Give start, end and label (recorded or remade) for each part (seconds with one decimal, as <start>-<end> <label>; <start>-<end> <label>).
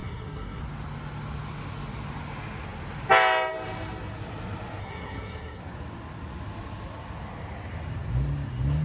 0.0-0.6 remade; 0.6-4.8 recorded; 4.8-5.6 remade; 5.6-8.8 recorded